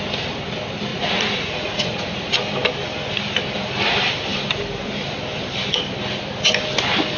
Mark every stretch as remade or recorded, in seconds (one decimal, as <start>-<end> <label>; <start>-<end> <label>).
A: 0.0-0.9 recorded; 0.9-2.3 remade; 2.3-7.2 recorded